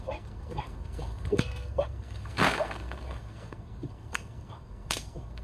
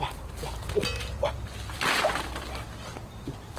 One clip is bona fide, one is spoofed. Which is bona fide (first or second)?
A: second